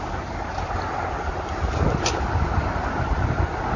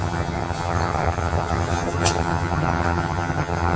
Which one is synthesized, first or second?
second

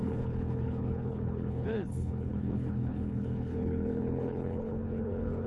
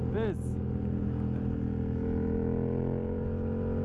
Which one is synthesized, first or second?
first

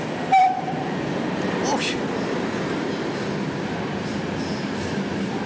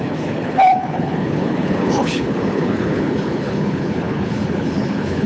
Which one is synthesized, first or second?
second